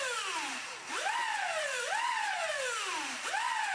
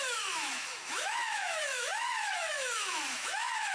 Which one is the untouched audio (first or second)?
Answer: first